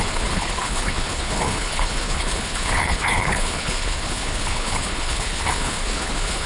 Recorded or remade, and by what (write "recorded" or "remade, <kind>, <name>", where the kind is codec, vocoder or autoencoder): remade, codec, HILCodec